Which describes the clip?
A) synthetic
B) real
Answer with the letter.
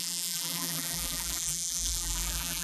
A